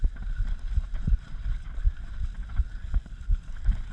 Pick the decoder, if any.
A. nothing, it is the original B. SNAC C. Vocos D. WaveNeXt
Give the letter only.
A